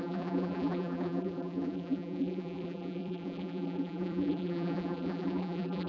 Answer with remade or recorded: remade